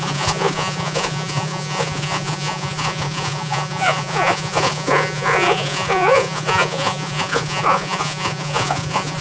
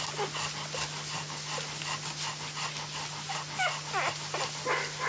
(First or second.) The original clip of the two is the second